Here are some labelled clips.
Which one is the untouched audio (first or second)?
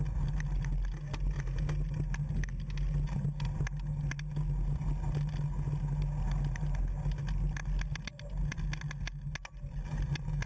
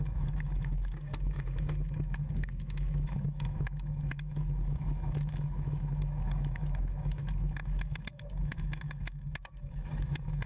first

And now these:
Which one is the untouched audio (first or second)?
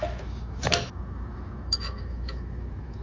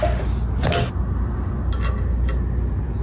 second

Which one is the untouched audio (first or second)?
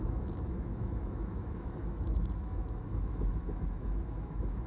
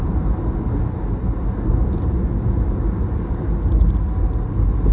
second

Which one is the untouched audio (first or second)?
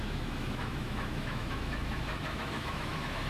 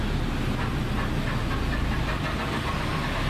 second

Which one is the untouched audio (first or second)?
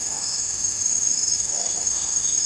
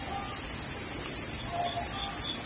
second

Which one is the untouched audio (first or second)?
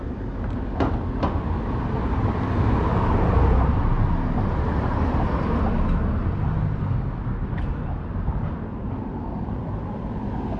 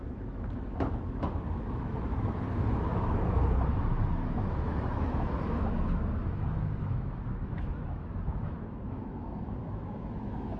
first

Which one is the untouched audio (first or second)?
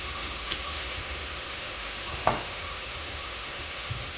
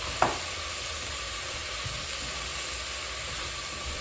second